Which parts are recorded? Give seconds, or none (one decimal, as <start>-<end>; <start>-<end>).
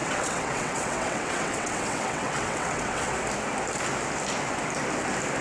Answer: 3.1-5.4